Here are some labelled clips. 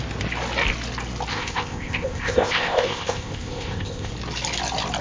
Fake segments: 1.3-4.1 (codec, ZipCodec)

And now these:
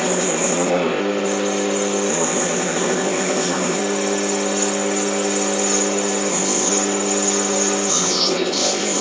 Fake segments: 0.0-1.0 (codec, ZipCodec); 2.1-3.8; 6.3-6.7; 7.9-9.0

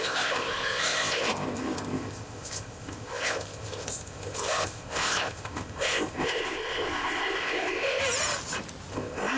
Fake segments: 0.0-8.0 (codec, ZipCodec); 8.9-9.4

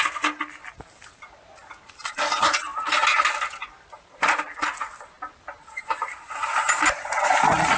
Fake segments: none

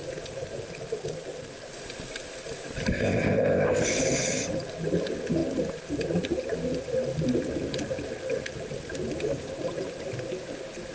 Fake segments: 2.9-4.0 (codec, ZipCodec)